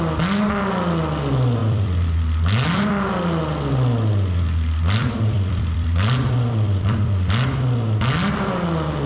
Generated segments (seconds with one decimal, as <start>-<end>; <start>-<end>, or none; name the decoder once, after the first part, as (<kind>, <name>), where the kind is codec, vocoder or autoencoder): 1.6-2.9 (vocoder, BigVGAN v2); 5.0-7.3